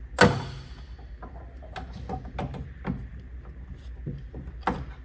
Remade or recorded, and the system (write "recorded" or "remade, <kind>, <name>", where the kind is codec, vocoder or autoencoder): recorded